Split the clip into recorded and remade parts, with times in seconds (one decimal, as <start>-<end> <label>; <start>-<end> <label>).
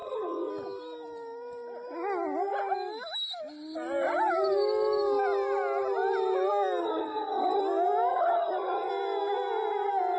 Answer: 0.0-0.5 remade; 0.5-6.8 recorded; 6.8-7.6 remade; 7.6-8.1 recorded; 8.1-8.9 remade; 8.9-10.2 recorded